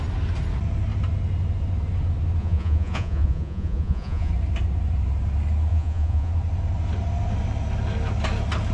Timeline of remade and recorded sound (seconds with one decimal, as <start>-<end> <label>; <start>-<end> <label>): 0.0-2.4 recorded; 2.4-4.3 remade; 4.3-5.7 recorded; 5.7-6.3 remade; 6.3-8.7 recorded

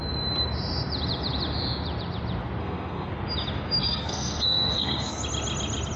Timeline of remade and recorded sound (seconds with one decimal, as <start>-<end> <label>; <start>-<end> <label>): 0.0-2.6 recorded; 2.6-3.1 remade; 3.1-3.8 recorded; 3.8-5.1 remade; 5.1-6.0 recorded

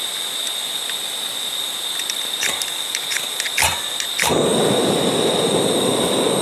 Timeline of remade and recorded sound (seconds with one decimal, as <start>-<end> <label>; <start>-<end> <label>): 0.0-6.4 recorded

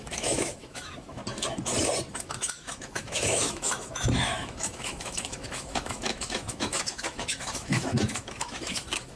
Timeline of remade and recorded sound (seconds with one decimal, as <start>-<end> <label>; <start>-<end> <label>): 0.0-1.2 remade; 1.2-2.1 recorded; 2.1-9.2 remade

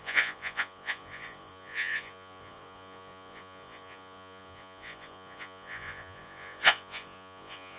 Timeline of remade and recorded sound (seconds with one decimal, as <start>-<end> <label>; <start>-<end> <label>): 0.0-7.8 remade

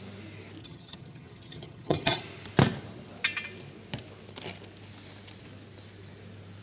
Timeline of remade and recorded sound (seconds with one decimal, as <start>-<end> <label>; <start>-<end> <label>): 0.0-0.6 recorded; 0.6-2.2 remade; 2.2-6.6 recorded

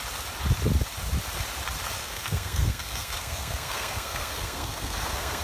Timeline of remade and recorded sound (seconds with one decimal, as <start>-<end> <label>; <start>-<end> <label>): 0.0-2.0 recorded; 2.0-5.4 remade